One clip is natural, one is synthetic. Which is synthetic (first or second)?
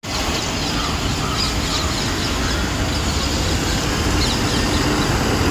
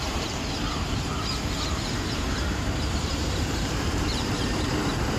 second